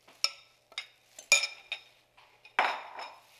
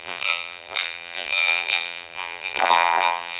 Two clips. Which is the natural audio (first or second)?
first